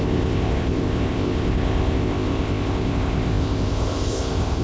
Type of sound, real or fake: fake